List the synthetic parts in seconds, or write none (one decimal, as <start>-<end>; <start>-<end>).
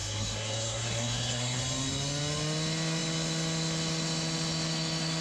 0.0-1.6